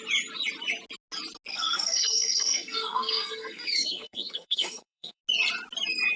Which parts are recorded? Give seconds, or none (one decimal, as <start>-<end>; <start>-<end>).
0.0-1.5; 5.2-6.2